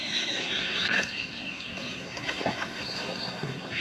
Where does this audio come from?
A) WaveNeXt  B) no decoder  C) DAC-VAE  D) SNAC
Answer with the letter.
D